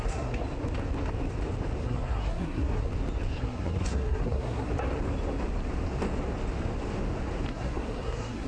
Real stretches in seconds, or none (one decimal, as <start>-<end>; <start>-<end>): 0.4-1.8; 2.9-3.4; 4.7-7.5